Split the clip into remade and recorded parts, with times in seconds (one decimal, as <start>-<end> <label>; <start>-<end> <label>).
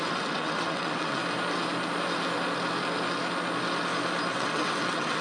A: 0.0-1.2 remade; 1.2-4.3 recorded; 4.3-5.2 remade